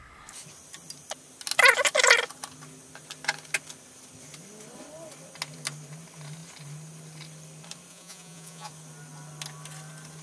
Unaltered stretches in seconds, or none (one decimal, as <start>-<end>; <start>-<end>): 0.0-7.9; 8.7-10.2